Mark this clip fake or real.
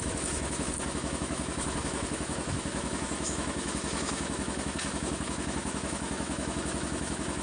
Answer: fake